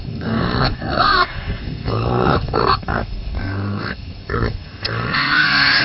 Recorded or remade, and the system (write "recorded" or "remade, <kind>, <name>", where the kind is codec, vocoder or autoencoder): remade, codec, SNAC